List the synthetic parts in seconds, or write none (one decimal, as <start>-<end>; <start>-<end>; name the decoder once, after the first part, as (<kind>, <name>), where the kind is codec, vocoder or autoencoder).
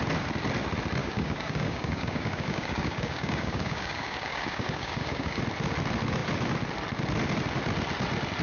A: 1.0-5.4 (codec, DAC)